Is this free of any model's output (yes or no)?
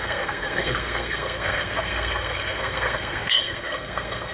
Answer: no